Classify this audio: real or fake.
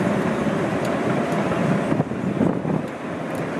fake